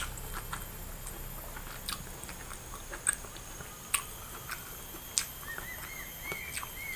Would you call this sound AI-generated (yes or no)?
no